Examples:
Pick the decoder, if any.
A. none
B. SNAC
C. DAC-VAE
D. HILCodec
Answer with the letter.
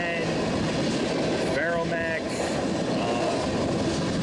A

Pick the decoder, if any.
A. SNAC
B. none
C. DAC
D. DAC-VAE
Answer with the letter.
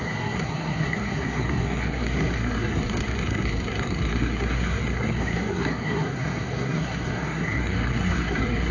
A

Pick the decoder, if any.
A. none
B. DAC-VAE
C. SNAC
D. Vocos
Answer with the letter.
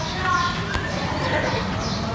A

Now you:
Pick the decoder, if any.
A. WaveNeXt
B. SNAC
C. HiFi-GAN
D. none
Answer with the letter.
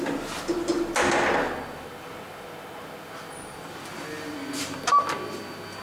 D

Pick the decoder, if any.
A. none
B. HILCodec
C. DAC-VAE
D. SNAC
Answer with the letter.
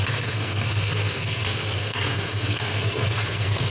D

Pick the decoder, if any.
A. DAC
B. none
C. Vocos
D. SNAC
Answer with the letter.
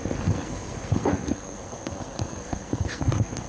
D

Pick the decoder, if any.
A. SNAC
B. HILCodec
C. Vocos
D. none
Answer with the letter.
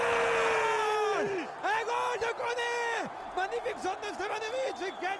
D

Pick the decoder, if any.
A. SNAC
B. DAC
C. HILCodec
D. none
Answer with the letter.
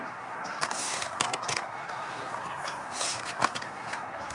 A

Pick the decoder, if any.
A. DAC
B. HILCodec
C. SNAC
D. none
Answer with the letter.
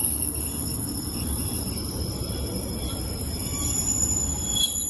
D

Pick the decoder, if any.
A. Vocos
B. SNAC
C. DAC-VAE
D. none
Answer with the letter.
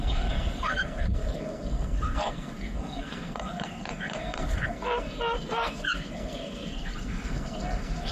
B